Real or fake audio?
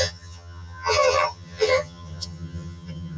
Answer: fake